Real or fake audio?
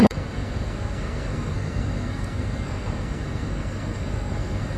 fake